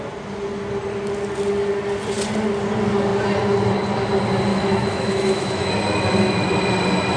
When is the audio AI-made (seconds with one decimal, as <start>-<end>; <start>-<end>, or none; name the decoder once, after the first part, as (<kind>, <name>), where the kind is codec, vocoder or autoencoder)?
4.5-5.7 (autoencoder, DAC-VAE)